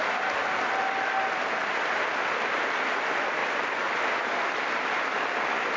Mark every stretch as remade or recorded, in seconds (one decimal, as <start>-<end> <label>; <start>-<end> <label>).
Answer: 0.0-5.8 recorded